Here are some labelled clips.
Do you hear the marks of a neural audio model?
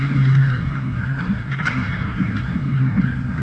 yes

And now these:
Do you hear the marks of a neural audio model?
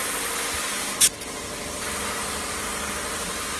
no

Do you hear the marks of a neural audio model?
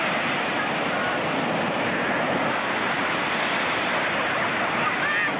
no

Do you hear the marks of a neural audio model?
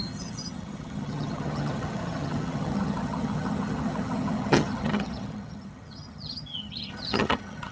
yes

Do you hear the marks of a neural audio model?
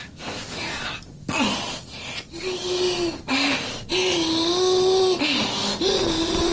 no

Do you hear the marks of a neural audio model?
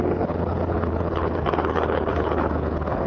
yes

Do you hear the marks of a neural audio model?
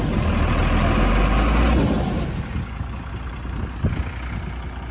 no